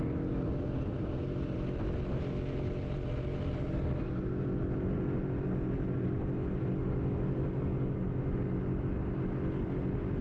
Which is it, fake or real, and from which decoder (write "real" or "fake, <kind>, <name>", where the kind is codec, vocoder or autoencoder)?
real